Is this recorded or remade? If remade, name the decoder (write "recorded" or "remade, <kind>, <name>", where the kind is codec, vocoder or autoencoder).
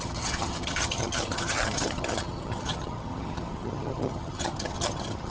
remade, vocoder, HiFi-GAN